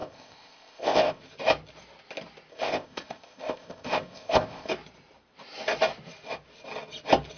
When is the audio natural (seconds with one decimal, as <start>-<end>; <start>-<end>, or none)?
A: 1.2-2.5; 4.7-7.4